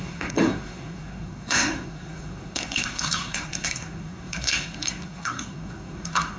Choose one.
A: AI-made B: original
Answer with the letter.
A